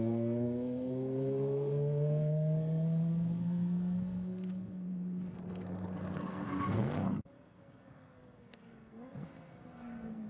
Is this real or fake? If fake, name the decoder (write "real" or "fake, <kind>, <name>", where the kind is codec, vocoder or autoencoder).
fake, codec, SNAC